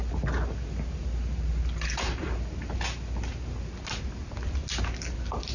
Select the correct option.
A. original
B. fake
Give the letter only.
A